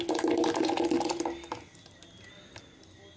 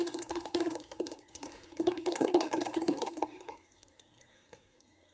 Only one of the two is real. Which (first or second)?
first